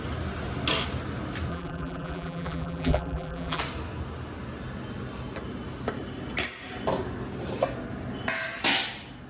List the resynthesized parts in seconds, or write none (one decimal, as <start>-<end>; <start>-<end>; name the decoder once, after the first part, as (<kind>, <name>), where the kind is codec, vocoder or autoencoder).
1.5-3.6 (vocoder, BigVGAN v2)